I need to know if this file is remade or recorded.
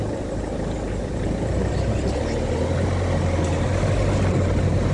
recorded